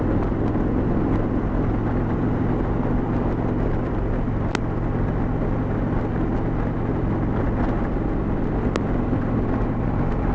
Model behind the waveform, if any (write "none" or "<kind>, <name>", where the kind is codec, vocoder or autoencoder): none